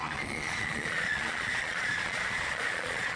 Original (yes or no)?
no